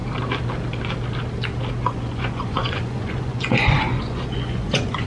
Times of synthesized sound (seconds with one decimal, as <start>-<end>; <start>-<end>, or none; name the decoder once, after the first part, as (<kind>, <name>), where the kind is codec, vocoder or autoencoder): 1.8-5.1 (vocoder, Vocos)